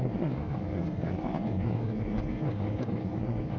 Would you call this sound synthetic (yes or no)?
yes